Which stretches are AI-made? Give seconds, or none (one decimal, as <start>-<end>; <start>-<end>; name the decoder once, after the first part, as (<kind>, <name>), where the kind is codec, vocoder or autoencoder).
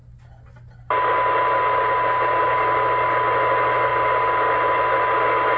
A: none